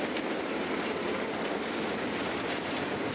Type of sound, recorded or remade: recorded